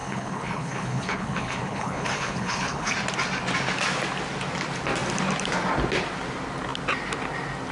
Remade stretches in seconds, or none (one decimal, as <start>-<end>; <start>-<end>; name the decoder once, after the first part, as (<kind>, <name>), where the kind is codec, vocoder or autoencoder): 0.0-2.9 (codec, HILCodec)